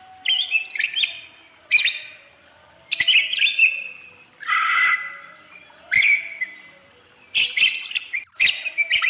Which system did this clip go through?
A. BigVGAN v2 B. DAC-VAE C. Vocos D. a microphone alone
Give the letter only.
D